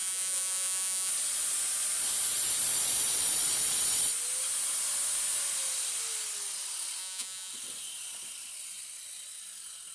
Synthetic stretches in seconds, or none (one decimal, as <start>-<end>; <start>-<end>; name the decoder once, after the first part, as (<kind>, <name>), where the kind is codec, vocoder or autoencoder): 0.0-1.1 (vocoder, Vocos); 7.0-7.5